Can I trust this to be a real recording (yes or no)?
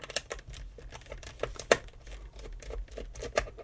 no